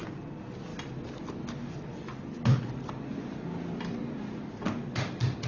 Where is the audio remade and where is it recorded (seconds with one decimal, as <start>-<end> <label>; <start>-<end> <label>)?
0.0-5.5 recorded